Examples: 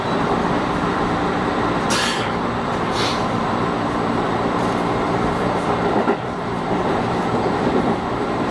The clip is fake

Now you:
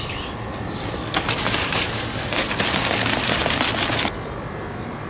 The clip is real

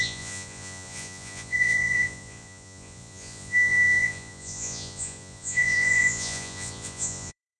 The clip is fake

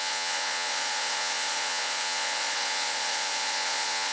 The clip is fake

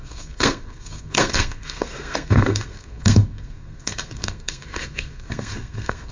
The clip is fake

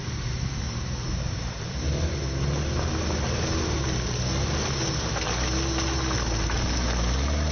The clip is real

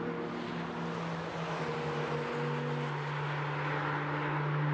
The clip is real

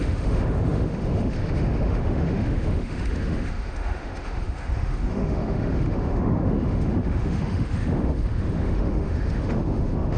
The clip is fake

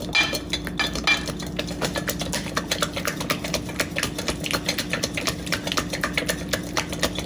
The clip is real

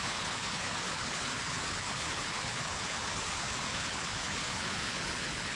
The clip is fake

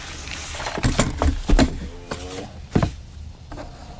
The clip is real